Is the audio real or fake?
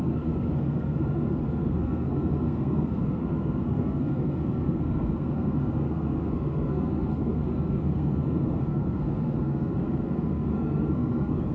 fake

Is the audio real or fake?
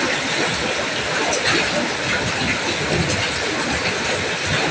real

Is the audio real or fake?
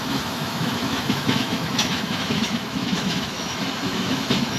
fake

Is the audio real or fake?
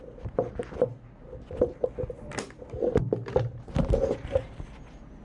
real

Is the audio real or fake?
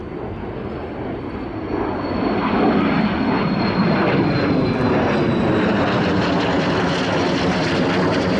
real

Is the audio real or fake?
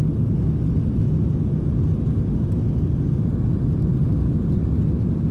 real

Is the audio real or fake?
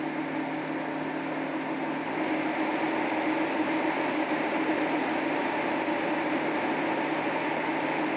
real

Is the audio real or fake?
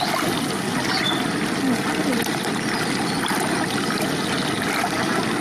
real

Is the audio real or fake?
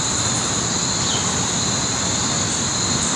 real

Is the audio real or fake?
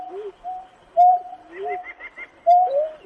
fake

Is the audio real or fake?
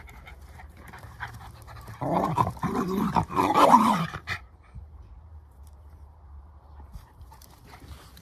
fake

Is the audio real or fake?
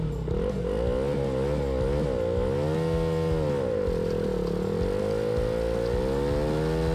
real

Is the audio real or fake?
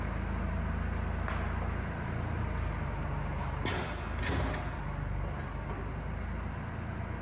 real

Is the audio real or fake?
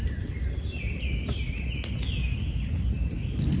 real